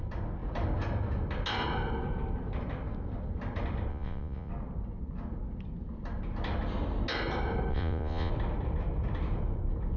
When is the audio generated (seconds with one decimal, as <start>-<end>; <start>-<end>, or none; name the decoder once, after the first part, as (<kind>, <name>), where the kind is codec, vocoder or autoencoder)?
3.9-4.5 (vocoder, Vocos); 7.7-8.3